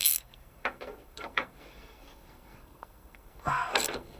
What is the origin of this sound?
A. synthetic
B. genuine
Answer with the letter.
A